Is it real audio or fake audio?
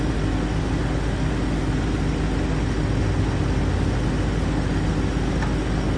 real